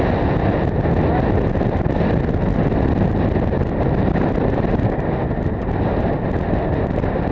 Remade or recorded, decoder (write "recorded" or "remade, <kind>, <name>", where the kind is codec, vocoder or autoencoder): recorded